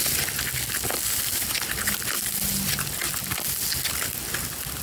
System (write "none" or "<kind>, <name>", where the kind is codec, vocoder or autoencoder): none